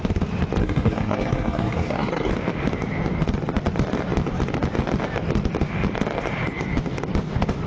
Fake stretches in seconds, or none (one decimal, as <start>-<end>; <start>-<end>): 0.6-2.3